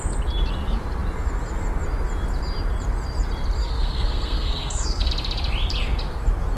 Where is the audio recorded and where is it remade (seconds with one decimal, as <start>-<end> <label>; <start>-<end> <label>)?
0.0-3.6 recorded; 3.6-5.1 remade; 5.1-6.6 recorded